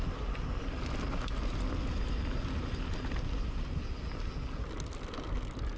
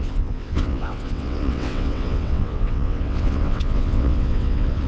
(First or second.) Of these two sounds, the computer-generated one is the second